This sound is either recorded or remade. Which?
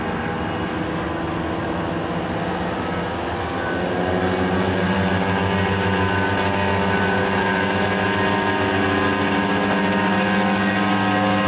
recorded